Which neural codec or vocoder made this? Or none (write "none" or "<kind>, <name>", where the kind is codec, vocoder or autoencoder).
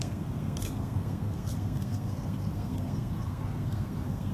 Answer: codec, SNAC